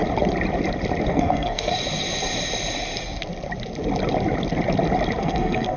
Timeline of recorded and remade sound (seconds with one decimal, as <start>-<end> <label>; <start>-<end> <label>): 0.0-1.1 recorded; 1.1-1.7 remade; 1.7-5.2 recorded; 5.2-5.8 remade